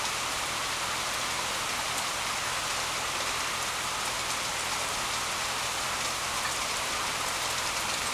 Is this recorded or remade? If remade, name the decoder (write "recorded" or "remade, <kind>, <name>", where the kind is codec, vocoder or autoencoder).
recorded